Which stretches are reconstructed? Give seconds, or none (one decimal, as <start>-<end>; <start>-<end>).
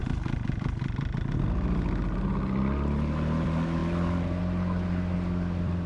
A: none